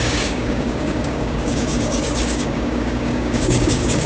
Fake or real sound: fake